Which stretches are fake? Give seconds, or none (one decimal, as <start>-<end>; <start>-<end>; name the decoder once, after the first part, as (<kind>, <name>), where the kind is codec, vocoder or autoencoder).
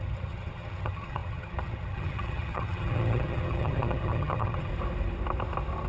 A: 0.0-4.7 (vocoder, HiFi-GAN)